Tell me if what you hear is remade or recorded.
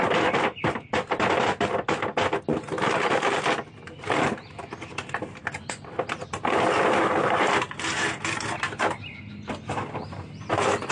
recorded